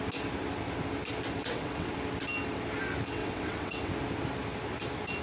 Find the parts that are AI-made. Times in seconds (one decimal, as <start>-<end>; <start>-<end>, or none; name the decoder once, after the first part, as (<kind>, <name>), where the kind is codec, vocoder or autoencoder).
1.4-1.9 (vocoder, WaveNeXt); 3.2-3.9